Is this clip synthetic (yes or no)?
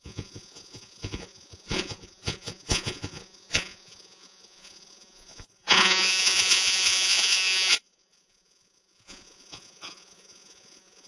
yes